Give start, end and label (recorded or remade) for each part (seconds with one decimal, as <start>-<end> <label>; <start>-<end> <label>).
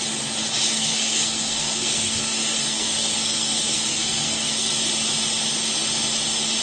0.0-0.7 recorded; 0.7-4.7 remade; 4.7-6.6 recorded